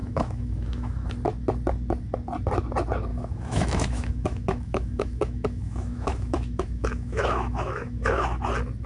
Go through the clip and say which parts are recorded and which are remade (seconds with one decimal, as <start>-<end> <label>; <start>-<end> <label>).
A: 0.0-1.1 remade; 1.1-3.1 recorded; 3.1-8.4 remade; 8.4-8.9 recorded